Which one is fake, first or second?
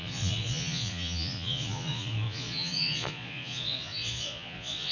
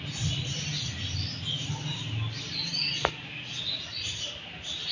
first